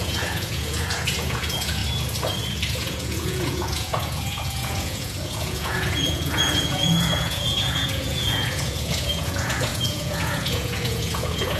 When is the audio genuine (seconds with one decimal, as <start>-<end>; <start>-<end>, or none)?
1.8-2.7